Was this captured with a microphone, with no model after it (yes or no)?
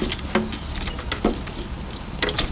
yes